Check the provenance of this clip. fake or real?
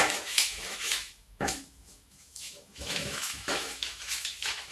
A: fake